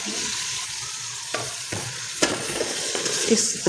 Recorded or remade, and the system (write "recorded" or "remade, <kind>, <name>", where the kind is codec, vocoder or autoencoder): remade, vocoder, Vocos